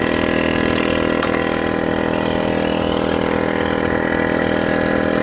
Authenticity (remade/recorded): recorded